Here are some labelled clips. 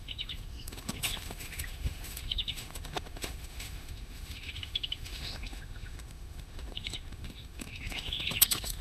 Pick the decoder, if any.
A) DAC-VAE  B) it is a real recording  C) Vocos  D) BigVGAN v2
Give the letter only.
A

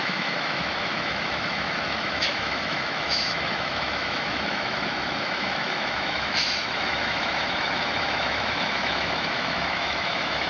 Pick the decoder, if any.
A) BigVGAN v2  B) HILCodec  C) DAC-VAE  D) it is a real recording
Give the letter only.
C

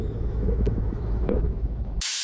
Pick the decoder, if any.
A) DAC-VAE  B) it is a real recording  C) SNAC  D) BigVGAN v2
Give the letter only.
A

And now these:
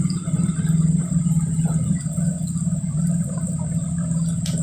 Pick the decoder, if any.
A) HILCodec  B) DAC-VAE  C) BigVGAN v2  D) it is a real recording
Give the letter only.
D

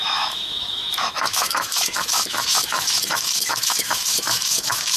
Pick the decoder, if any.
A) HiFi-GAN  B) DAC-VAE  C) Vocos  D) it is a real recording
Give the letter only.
B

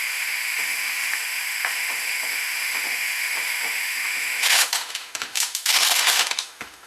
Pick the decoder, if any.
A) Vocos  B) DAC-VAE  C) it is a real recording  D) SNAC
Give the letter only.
B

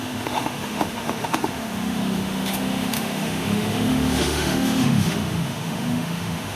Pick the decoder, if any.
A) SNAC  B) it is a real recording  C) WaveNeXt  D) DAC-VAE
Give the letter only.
D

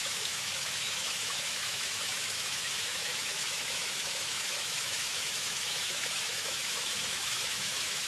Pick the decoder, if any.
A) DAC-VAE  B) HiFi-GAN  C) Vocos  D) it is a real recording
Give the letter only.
A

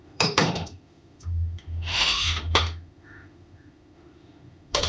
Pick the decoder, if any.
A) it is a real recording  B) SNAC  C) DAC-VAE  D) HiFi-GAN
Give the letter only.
C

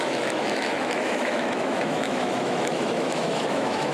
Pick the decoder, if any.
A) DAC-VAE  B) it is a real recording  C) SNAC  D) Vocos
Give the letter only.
A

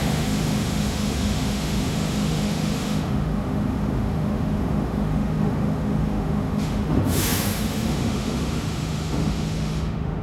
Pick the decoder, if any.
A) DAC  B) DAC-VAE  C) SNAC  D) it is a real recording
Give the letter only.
B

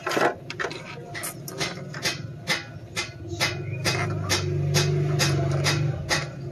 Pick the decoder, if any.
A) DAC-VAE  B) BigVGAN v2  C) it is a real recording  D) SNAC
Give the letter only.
C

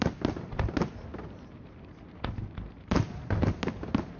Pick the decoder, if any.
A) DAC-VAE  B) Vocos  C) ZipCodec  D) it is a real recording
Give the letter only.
D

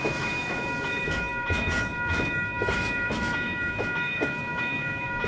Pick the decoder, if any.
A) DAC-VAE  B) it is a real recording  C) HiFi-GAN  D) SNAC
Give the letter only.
A